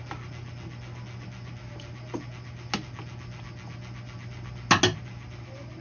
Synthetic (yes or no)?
no